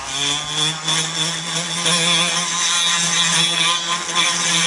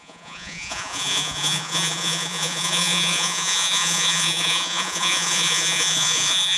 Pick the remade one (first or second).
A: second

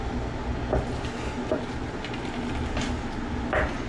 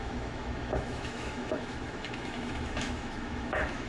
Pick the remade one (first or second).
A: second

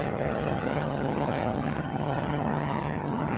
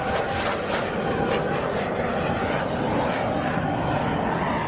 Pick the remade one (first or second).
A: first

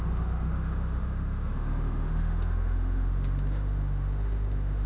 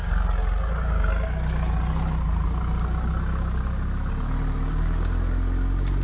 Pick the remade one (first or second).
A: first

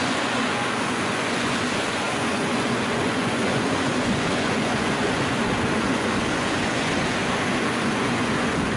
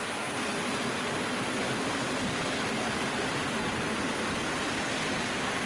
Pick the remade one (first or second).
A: first